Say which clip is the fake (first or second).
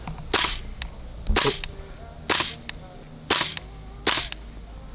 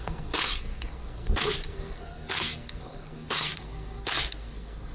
second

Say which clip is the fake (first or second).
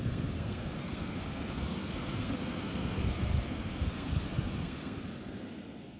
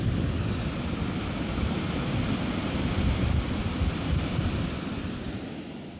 first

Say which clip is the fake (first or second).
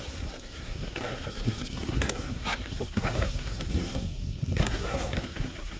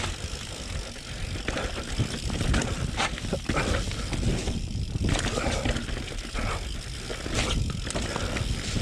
first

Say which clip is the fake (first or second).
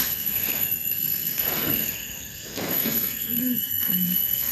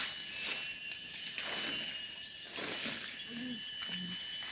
first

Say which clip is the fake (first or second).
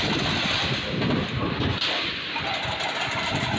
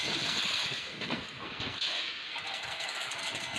second